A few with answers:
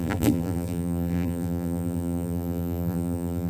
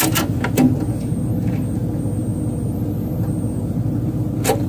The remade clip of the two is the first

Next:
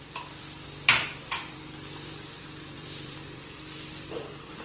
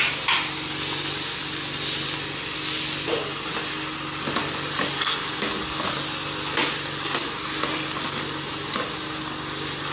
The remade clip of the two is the first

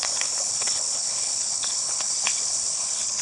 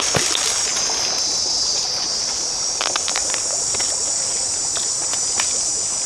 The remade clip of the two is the first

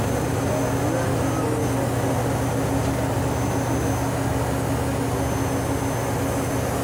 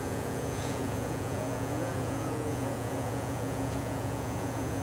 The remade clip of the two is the second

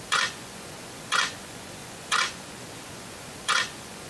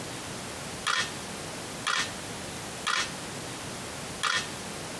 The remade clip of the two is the first